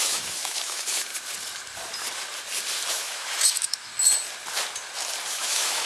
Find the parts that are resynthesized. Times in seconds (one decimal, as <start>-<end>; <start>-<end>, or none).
0.0-1.1; 2.9-3.9; 5.3-5.9